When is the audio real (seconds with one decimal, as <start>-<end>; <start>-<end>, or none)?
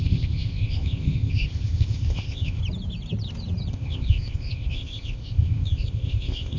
2.6-3.7